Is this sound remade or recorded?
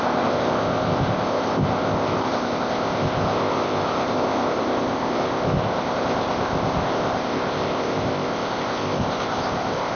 remade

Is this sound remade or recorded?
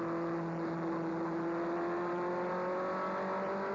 recorded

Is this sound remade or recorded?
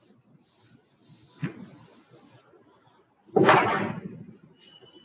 recorded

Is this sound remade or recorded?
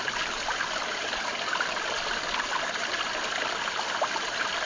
recorded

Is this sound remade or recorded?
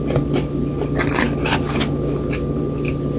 recorded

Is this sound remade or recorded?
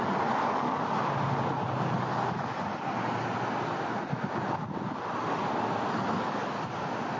recorded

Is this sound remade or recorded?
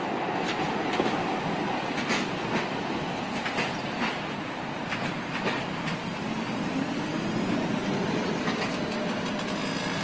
recorded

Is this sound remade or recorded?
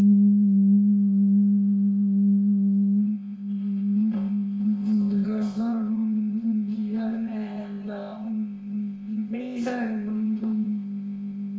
remade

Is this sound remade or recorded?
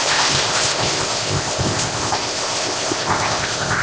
remade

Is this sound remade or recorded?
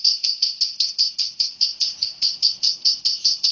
remade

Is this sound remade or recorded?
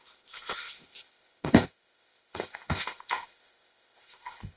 remade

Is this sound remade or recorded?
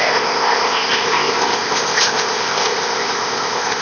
remade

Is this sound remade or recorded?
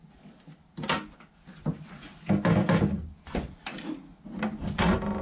recorded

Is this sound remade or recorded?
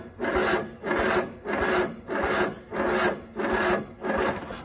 recorded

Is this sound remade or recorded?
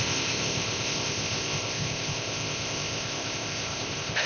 remade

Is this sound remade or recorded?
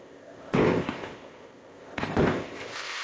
remade